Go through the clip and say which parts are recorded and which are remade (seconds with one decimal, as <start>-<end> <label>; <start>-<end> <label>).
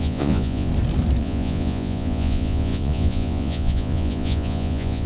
0.0-0.7 remade; 0.7-1.2 recorded; 1.2-5.1 remade